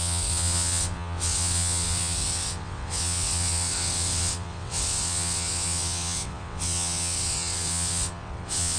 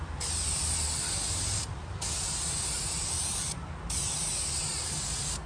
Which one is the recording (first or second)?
second